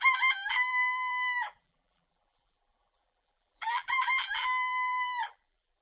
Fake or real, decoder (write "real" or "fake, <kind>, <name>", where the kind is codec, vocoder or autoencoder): fake, vocoder, BigVGAN v2